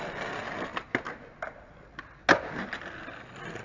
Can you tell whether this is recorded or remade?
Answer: recorded